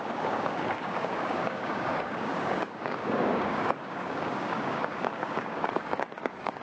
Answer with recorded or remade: remade